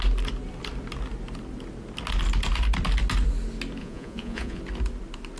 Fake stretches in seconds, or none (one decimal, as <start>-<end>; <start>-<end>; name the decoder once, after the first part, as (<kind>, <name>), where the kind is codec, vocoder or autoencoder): 3.8-4.6 (vocoder, Vocos)